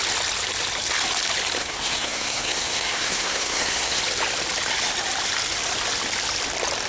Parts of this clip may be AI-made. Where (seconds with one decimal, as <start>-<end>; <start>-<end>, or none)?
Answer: 1.6-4.0